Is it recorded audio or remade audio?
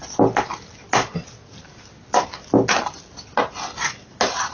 recorded